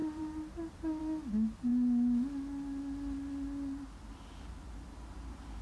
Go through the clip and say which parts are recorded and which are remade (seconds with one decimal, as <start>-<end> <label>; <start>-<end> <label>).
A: 0.0-1.0 remade; 1.0-5.6 recorded